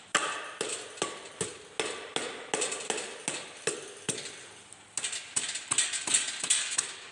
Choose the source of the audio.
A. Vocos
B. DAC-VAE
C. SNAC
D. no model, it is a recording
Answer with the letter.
D